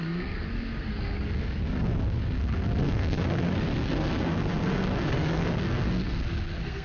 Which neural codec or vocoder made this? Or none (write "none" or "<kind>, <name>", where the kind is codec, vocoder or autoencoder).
codec, SNAC